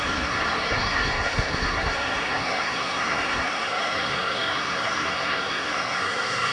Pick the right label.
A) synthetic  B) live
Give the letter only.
A